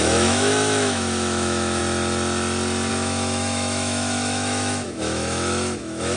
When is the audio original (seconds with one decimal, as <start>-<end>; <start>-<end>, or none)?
1.8-2.9